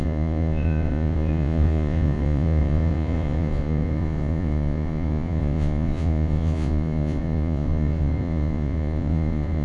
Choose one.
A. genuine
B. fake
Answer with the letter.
B